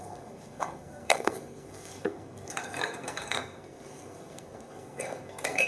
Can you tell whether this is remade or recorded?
remade